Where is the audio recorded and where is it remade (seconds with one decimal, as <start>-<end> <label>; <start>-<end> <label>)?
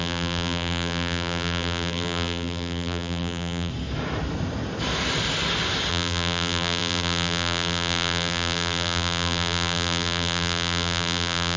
0.0-3.7 remade; 3.7-5.9 recorded; 5.9-11.6 remade